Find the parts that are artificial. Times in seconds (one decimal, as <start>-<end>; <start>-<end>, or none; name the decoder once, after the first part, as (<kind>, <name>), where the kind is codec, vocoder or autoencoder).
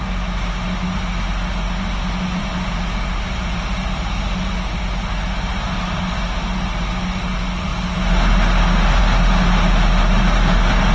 none